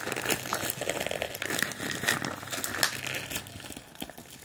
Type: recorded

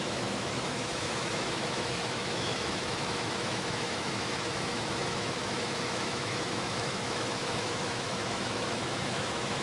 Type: remade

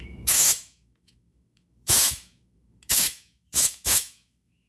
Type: remade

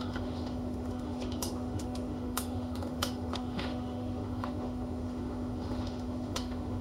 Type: remade